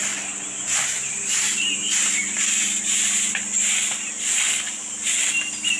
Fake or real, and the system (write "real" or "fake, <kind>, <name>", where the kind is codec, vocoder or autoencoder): fake, vocoder, BigVGAN v2